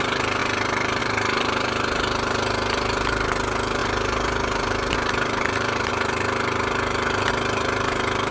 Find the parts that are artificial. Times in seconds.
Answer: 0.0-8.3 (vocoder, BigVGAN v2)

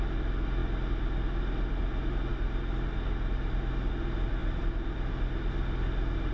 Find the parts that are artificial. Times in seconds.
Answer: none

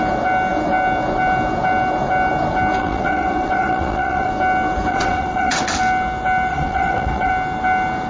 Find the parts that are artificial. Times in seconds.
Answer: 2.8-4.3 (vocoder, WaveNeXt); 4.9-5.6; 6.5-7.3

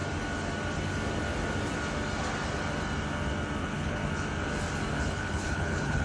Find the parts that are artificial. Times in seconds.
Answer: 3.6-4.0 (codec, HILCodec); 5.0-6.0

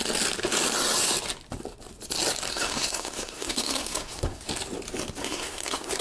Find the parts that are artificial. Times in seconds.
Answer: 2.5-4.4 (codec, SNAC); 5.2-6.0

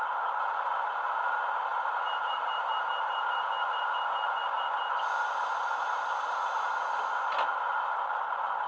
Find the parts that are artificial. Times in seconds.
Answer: 1.7-2.9 (vocoder, BigVGAN v2)